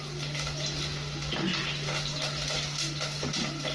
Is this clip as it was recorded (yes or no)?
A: yes